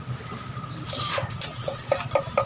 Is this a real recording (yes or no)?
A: yes